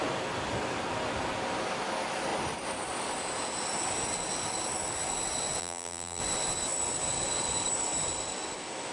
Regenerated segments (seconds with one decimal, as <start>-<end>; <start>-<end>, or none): 5.6-6.2